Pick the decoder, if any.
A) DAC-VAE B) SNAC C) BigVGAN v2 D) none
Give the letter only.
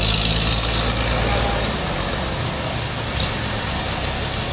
D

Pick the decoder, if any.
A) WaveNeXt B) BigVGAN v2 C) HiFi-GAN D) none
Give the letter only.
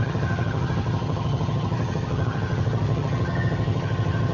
C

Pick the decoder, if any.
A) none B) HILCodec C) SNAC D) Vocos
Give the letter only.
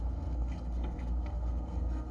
C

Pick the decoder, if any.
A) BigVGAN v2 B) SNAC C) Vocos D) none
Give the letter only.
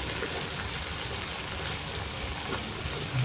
D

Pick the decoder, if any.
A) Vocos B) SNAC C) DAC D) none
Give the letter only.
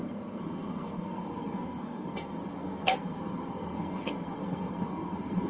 B